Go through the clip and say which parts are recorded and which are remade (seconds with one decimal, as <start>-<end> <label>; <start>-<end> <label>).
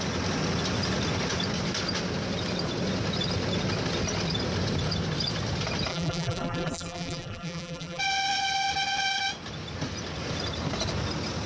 0.0-5.9 recorded; 5.9-8.0 remade; 8.0-11.5 recorded